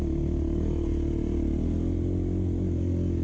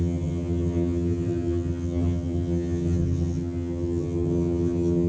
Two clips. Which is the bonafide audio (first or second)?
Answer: first